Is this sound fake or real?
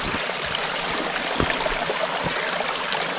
real